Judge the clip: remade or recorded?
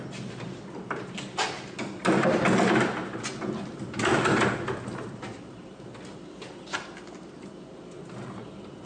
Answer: recorded